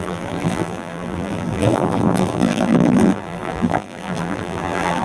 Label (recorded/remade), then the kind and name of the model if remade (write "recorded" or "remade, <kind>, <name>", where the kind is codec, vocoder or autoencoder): remade, vocoder, BigVGAN v2